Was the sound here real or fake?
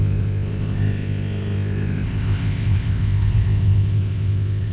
fake